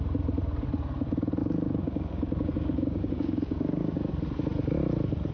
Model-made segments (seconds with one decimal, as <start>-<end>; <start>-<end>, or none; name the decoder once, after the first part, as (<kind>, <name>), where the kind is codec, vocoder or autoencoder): 1.4-4.1 (codec, DAC)